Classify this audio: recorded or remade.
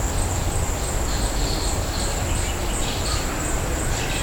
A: recorded